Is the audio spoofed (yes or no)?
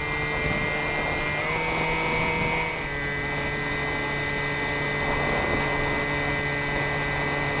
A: no